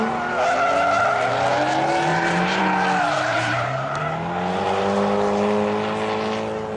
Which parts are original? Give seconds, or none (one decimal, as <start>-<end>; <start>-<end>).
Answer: 0.0-2.1; 2.6-3.3; 4.0-6.8